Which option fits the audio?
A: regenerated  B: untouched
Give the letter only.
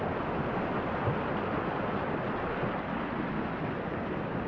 B